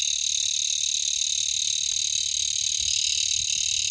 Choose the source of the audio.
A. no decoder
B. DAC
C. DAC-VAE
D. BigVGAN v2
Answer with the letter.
A